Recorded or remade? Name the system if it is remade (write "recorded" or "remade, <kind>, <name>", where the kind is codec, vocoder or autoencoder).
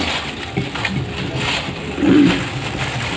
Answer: recorded